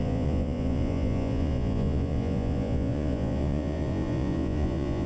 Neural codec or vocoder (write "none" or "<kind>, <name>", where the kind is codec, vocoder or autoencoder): vocoder, Vocos